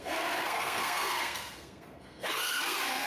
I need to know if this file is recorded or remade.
remade